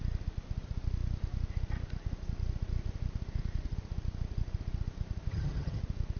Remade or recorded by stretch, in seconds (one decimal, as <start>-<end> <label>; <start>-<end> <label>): 0.0-5.3 recorded; 5.3-5.8 remade; 5.8-6.2 recorded